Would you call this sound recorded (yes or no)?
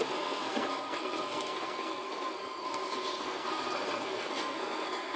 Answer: no